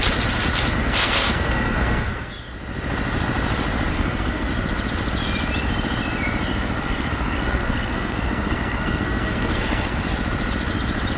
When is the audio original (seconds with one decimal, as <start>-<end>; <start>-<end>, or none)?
0.0-0.8; 2.3-3.9; 4.5-6.5; 10.0-11.2